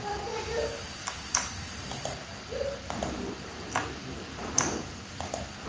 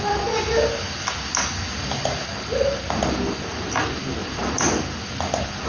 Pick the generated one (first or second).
first